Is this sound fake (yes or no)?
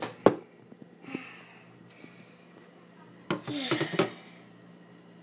no